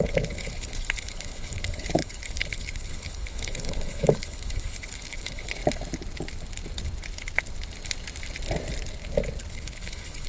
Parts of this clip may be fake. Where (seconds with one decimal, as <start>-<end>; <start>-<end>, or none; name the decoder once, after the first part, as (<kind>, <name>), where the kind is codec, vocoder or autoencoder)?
0.0-5.6 (codec, HILCodec); 9.5-10.3